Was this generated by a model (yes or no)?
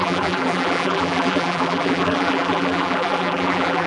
yes